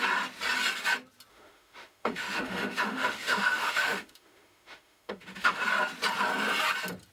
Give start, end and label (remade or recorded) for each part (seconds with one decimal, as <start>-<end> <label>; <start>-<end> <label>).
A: 0.0-1.3 recorded; 1.3-5.6 remade; 5.6-7.1 recorded